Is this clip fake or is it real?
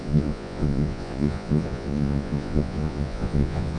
fake